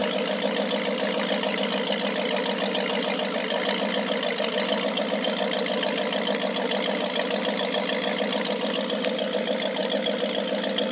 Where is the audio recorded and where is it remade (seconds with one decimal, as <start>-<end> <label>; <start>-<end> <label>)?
0.0-10.9 recorded